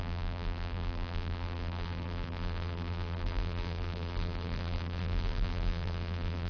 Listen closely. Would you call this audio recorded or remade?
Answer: remade